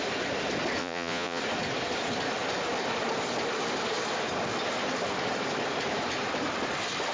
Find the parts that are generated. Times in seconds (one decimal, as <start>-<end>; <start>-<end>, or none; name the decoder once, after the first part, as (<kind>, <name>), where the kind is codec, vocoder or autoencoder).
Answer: 0.8-1.4 (vocoder, Vocos)